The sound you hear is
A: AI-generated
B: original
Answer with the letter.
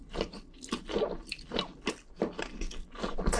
B